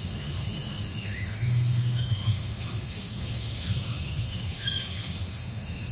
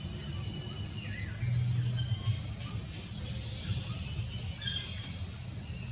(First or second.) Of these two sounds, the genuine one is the second